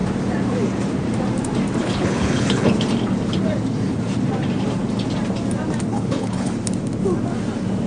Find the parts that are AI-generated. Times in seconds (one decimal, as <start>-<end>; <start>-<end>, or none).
1.8-2.7; 5.9-6.5